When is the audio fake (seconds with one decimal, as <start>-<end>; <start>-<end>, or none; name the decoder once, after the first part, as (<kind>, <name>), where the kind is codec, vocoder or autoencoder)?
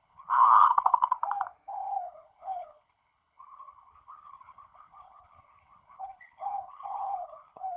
0.0-1.2 (codec, HILCodec); 1.7-7.8